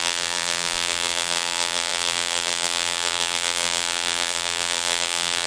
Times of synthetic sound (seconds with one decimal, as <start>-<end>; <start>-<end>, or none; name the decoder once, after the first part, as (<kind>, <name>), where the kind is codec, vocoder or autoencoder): 0.0-5.5 (vocoder, BigVGAN v2)